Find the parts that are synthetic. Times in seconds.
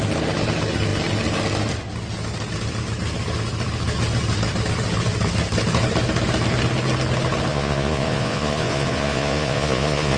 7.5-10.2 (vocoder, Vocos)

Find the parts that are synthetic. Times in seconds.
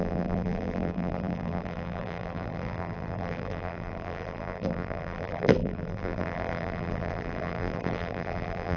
0.0-8.8 (vocoder, BigVGAN v2)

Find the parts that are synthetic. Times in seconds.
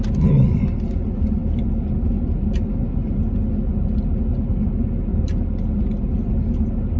none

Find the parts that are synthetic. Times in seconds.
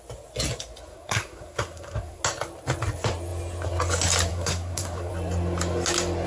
0.9-2.2 (codec, SNAC); 4.3-5.1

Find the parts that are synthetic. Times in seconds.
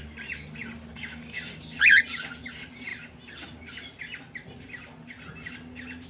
0.9-1.6 (codec, DAC)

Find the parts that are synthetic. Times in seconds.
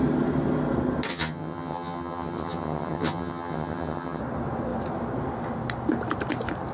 1.1-4.2 (vocoder, HiFi-GAN)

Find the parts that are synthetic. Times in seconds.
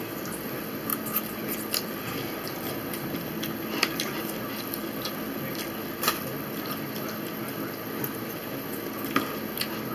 none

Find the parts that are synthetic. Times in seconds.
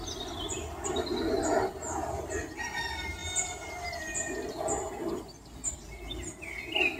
3.2-5.7 (vocoder, BigVGAN v2)